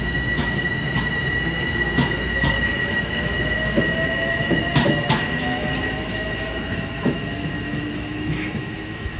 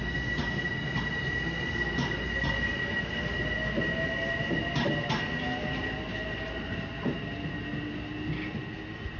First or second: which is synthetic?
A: first